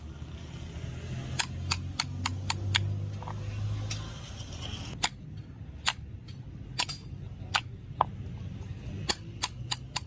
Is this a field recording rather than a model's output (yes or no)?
yes